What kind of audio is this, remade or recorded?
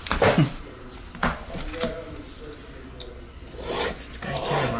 recorded